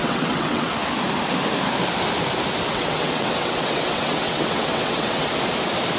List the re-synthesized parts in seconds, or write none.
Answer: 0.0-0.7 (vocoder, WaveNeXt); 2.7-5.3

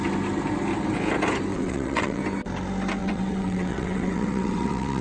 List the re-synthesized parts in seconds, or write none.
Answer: 1.5-2.2 (vocoder, WaveNeXt); 3.0-5.0

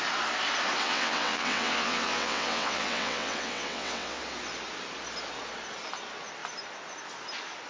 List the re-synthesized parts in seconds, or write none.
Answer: 0.8-4.2 (vocoder, WaveNeXt)

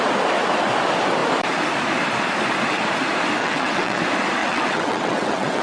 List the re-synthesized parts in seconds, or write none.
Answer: 3.4-4.0 (vocoder, WaveNeXt); 4.4-5.6

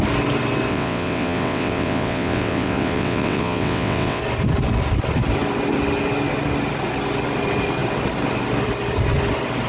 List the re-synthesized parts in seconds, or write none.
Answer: 0.7-4.2 (vocoder, WaveNeXt)

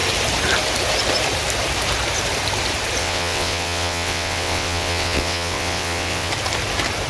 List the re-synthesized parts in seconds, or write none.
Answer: 3.0-6.3 (vocoder, WaveNeXt)

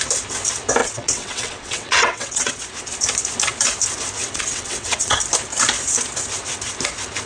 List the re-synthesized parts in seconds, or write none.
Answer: 0.8-2.6 (vocoder, WaveNeXt); 4.2-5.2

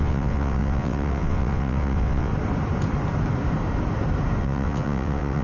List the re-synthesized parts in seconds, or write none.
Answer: 0.0-2.3 (vocoder, WaveNeXt); 4.4-5.4